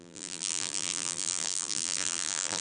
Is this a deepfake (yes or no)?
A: yes